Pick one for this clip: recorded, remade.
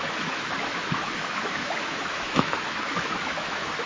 remade